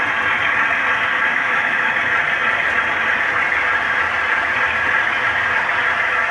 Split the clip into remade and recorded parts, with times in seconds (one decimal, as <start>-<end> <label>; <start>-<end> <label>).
0.0-1.3 recorded; 1.3-1.9 remade; 1.9-6.3 recorded